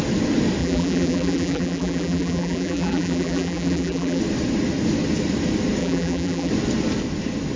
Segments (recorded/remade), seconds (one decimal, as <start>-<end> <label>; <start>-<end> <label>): 0.0-0.6 recorded; 0.6-4.2 remade; 4.2-5.8 recorded; 5.8-6.5 remade; 6.5-7.6 recorded